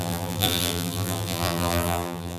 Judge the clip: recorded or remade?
remade